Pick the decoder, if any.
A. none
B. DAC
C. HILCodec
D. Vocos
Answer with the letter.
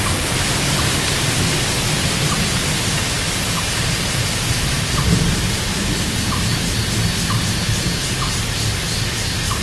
A